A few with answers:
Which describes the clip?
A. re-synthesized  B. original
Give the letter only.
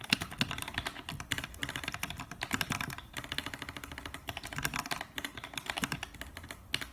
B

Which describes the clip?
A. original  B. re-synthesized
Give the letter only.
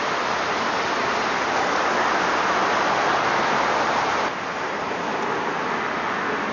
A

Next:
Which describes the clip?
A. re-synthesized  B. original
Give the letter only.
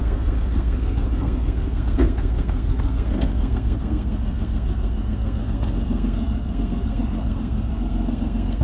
A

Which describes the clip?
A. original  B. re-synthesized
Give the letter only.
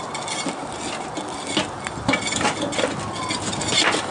A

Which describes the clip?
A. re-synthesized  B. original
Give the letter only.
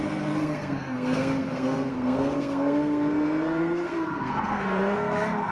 A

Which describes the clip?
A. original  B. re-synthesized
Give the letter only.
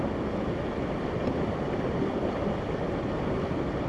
A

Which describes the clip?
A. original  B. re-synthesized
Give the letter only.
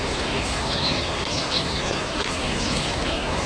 B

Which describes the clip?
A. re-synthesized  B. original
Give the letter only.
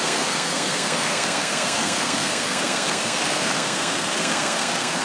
A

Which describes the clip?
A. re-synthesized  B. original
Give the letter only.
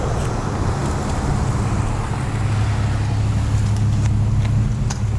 B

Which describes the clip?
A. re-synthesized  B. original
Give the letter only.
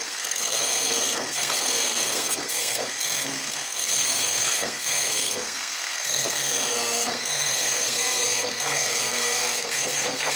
A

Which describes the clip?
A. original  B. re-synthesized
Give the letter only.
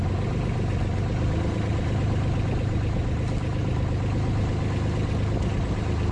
A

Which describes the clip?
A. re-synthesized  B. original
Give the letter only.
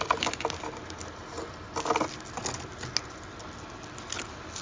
B